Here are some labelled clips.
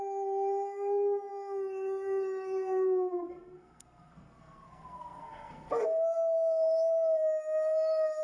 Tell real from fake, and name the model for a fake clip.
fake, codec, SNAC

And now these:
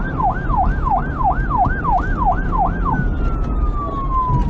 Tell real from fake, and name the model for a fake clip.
real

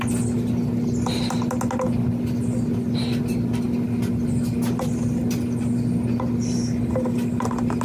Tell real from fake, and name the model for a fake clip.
real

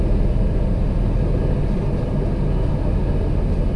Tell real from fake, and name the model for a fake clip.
real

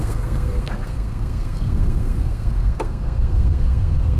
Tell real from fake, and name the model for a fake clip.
fake, codec, SNAC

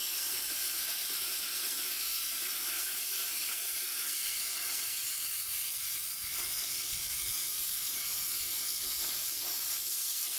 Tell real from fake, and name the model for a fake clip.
fake, codec, SNAC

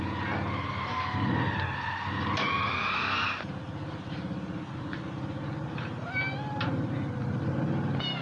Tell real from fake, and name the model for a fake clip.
real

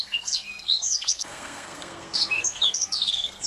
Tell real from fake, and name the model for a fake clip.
fake, codec, SNAC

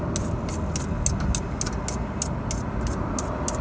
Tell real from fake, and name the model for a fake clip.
real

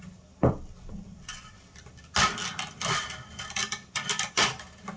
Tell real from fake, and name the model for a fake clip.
real